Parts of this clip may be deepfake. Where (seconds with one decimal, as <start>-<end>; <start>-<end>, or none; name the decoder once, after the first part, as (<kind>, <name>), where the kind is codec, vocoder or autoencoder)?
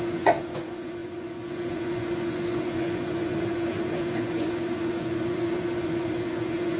0.0-6.8 (vocoder, Vocos)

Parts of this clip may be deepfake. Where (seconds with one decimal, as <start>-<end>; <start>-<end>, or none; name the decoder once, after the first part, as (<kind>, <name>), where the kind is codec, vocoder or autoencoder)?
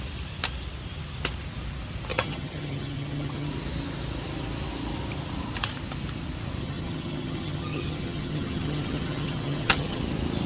2.1-3.5 (vocoder, HiFi-GAN); 6.6-10.0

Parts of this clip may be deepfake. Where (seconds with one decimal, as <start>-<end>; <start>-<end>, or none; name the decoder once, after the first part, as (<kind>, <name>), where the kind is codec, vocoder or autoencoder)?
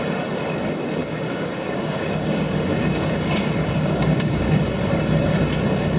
1.0-4.6 (codec, DAC)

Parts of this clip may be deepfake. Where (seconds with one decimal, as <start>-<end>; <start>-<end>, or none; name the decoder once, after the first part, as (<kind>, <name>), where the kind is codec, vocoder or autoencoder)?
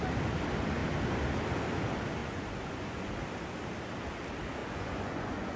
2.2-3.1 (vocoder, Vocos); 4.6-5.6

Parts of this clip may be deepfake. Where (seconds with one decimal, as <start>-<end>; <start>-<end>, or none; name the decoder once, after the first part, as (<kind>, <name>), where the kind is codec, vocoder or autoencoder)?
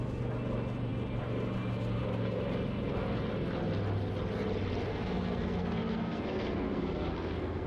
4.9-7.7 (codec, SNAC)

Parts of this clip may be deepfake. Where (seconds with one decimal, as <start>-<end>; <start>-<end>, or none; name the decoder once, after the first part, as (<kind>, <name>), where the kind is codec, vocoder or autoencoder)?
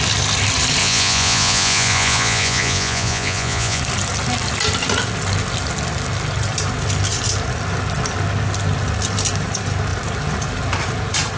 0.8-3.8 (vocoder, Vocos)